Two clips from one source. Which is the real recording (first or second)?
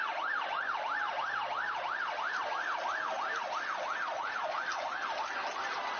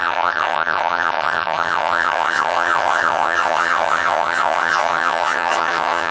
first